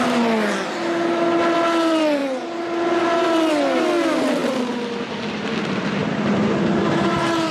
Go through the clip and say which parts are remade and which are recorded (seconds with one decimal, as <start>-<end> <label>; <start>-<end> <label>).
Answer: 0.0-7.5 recorded